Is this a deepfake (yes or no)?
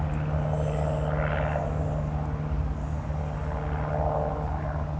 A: no